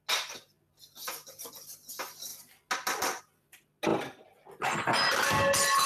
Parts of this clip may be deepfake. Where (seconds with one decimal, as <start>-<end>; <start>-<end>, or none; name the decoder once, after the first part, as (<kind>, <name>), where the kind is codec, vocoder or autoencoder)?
none